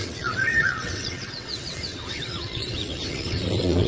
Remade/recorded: remade